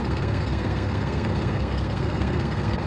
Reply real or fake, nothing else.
fake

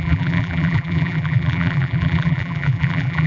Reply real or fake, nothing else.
fake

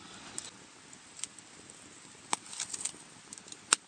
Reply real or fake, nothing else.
real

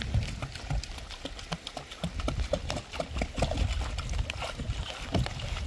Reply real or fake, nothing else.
real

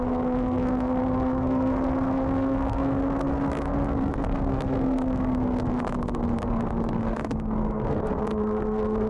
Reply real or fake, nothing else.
fake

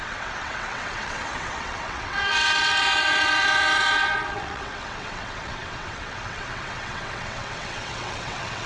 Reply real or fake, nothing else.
fake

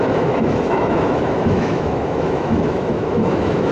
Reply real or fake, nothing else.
fake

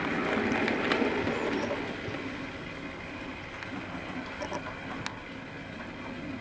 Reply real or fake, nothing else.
real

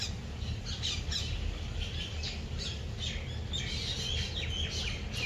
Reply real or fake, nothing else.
real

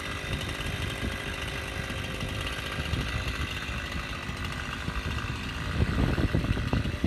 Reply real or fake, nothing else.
real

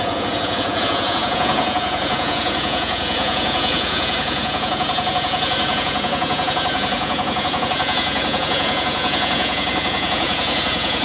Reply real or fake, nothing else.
fake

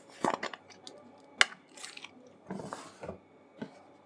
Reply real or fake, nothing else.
real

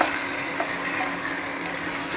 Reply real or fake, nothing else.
real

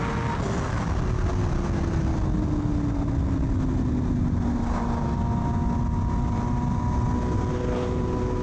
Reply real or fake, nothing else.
real